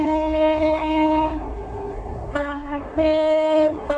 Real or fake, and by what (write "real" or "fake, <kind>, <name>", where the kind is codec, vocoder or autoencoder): fake, codec, SNAC